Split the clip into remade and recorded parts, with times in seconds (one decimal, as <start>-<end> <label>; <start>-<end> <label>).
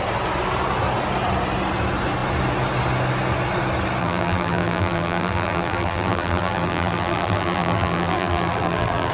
0.0-4.0 recorded; 4.0-9.1 remade